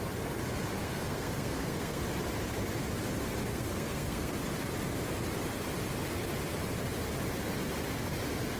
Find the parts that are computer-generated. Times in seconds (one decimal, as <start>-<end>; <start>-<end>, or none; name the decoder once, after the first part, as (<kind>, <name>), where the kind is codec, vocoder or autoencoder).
0.8-2.0 (codec, SNAC); 3.5-4.3